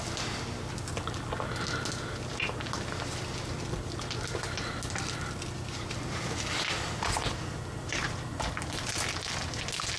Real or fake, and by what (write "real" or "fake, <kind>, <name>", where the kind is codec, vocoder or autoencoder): real